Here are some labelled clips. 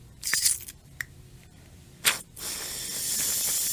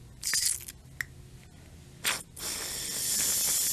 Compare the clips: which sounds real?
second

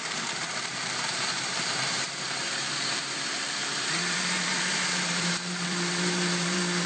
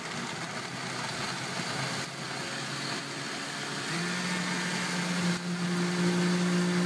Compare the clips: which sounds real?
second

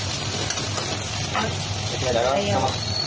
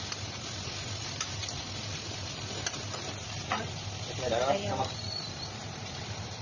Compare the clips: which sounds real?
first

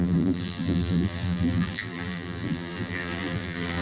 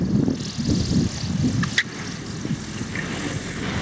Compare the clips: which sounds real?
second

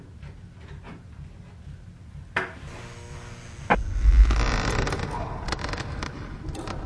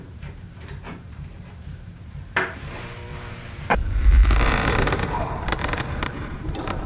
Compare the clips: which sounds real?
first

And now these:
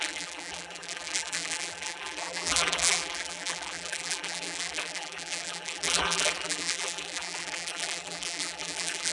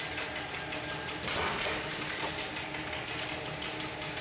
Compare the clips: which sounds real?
second